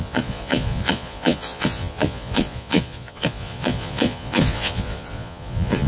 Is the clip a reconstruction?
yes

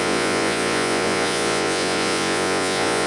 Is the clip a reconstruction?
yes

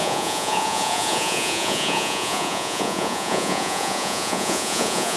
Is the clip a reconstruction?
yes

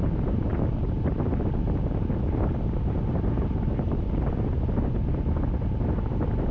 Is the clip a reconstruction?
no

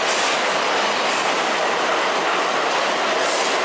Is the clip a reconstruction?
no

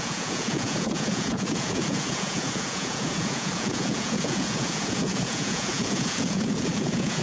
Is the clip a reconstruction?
yes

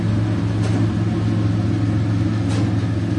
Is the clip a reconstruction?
no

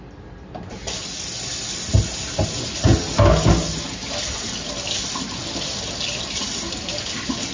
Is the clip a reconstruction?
no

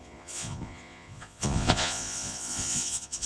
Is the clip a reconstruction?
yes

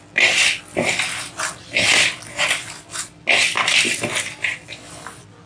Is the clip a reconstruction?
no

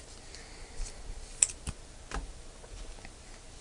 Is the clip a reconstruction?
no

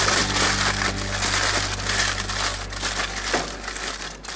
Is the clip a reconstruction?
no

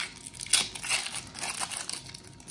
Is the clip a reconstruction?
no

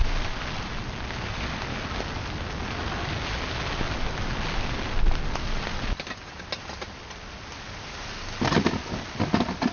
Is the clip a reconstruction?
no